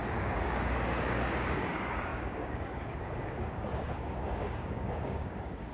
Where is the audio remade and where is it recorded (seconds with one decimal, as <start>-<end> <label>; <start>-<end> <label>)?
0.0-5.7 remade